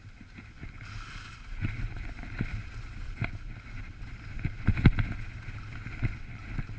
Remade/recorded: recorded